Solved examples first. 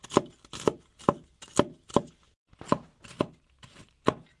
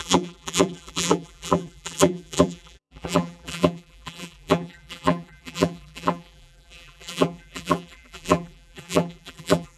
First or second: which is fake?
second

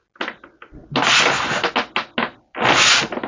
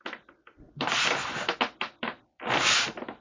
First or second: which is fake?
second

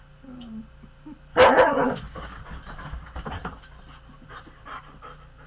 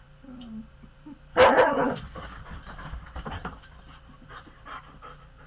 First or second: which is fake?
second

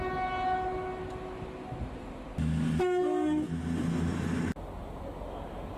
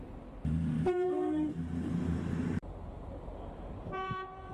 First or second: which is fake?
second